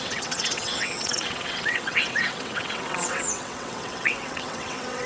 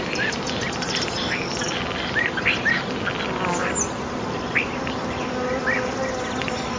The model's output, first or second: first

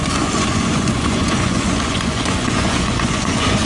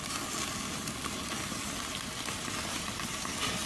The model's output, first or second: first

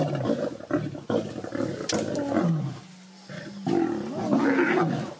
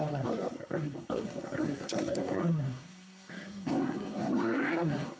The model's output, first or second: second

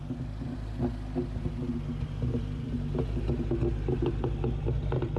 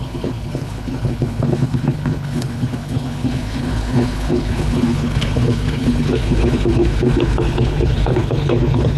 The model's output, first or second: second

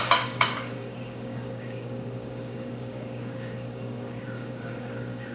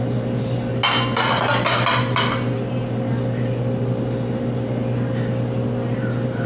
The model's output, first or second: first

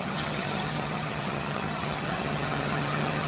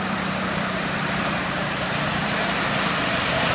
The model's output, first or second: first